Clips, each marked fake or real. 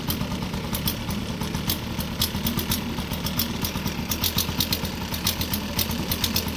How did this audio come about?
real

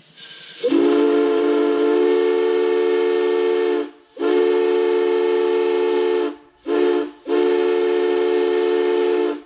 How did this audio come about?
real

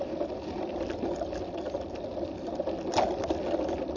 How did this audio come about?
real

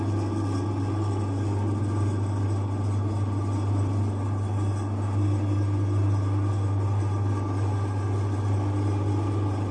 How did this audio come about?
real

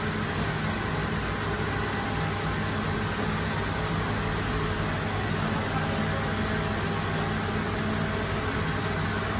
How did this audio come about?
real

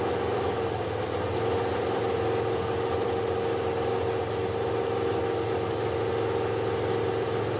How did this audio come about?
real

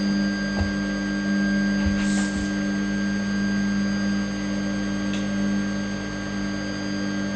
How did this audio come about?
real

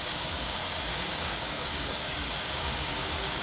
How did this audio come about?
fake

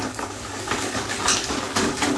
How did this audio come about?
fake